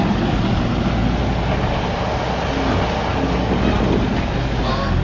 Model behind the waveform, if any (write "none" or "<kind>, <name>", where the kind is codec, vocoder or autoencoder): none